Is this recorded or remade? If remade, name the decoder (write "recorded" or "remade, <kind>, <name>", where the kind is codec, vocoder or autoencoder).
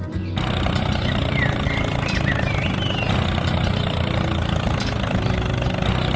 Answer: recorded